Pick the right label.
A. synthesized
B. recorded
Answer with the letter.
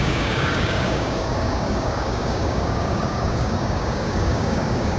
A